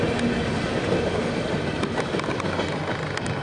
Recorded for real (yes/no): yes